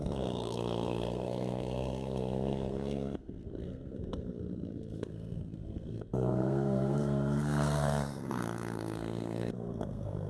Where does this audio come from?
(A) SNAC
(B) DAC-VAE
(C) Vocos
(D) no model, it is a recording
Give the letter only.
A